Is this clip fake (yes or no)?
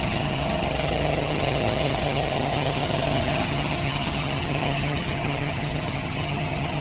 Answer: yes